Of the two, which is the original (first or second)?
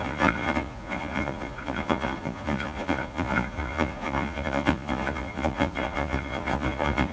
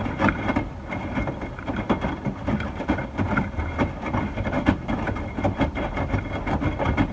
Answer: second